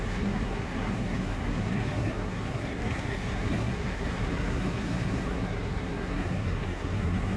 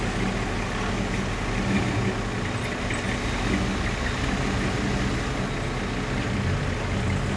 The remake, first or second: first